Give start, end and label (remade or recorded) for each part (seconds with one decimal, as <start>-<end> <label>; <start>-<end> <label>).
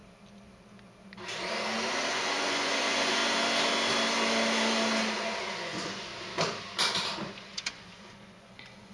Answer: 0.0-2.1 recorded; 2.1-3.2 remade; 3.2-5.4 recorded; 5.4-6.1 remade; 6.1-7.3 recorded; 7.3-8.9 remade